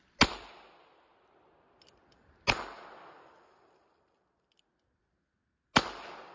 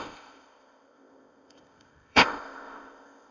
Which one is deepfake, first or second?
second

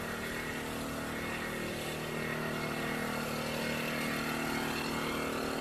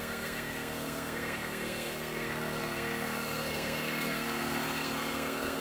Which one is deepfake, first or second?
second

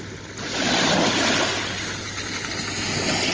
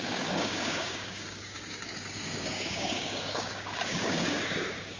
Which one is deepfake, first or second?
second